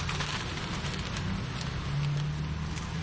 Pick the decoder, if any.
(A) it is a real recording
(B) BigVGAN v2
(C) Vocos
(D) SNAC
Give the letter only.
A